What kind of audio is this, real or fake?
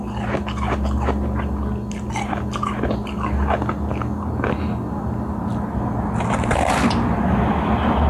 real